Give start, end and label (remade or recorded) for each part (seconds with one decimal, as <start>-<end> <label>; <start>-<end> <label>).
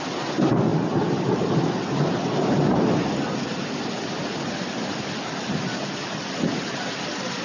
0.0-7.4 recorded